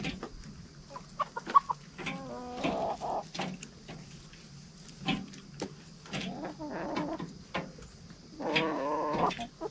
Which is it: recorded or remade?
recorded